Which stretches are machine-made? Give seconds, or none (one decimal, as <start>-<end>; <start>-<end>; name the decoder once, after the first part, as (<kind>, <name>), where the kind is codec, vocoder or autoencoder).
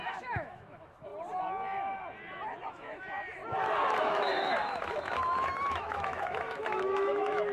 0.0-1.1 (autoencoder, DAC-VAE); 2.7-3.4; 4.0-7.5